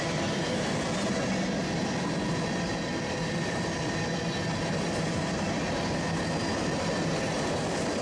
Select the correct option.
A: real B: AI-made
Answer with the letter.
A